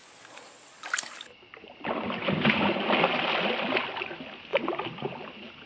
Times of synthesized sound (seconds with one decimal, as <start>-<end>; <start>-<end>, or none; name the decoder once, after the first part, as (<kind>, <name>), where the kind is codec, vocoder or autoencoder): none